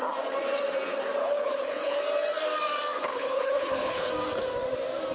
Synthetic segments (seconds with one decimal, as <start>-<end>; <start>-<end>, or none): 1.2-2.0; 3.1-4.1